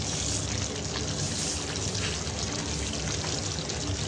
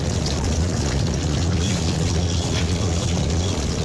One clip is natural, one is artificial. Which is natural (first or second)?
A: first